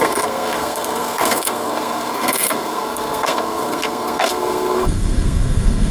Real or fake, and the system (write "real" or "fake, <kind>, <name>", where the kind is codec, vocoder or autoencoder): fake, codec, SNAC